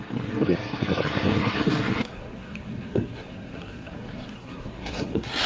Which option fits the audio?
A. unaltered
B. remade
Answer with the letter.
B